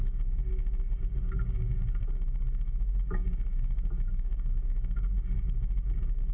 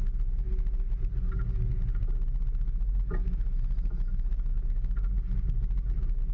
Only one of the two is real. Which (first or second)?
second